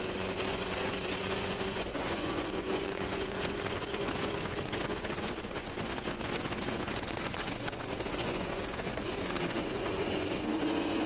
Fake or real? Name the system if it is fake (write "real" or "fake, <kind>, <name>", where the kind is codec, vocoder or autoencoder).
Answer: fake, vocoder, Vocos